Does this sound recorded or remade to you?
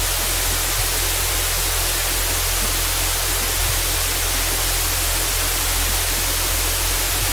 recorded